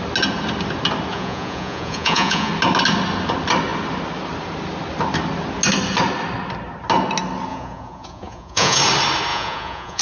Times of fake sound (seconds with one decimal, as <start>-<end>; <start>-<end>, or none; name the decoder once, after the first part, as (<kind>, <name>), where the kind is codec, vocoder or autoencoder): 1.1-2.5 (vocoder, Vocos); 7.5-8.8; 9.3-10.0